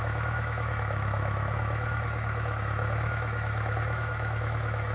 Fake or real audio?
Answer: fake